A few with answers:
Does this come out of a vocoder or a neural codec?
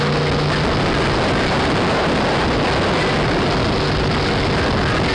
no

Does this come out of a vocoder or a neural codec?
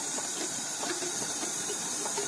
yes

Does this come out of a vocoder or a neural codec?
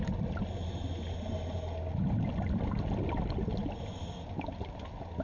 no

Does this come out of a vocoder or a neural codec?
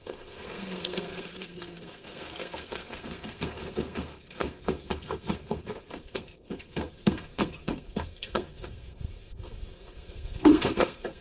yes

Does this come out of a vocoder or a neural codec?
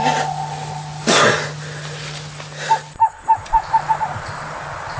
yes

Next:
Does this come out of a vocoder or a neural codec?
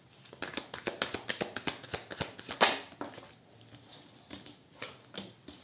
no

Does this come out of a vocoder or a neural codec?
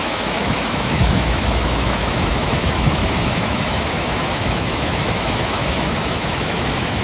yes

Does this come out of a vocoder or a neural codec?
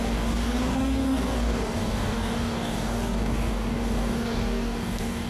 yes